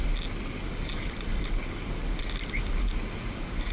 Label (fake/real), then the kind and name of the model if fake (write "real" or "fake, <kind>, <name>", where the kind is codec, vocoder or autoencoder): real